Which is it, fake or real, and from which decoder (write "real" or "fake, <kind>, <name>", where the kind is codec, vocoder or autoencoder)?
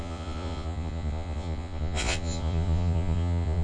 fake, vocoder, Vocos